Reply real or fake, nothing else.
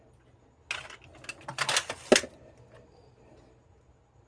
real